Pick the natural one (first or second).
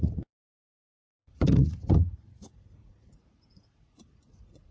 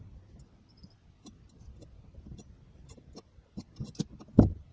second